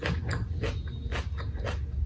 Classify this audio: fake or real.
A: real